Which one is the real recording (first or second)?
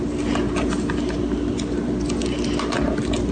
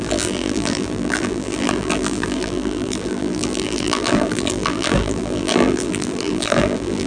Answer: first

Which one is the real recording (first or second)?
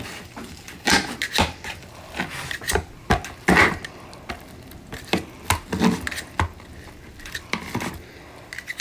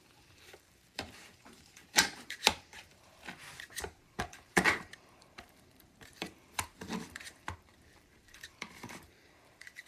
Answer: first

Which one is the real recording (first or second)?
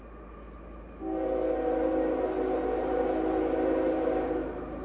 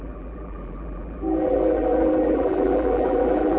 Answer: first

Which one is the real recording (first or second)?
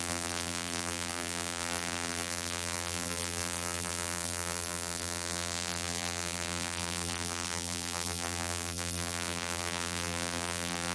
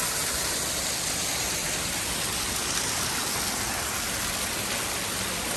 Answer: second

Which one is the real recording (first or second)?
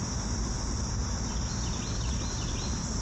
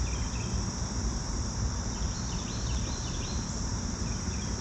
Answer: first